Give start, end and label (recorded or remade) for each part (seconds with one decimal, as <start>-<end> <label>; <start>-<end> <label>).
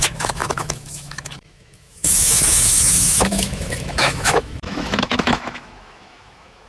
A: 0.0-6.7 remade